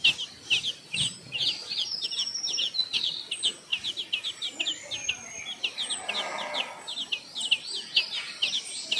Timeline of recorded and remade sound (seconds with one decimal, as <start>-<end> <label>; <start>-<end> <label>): 0.0-9.0 recorded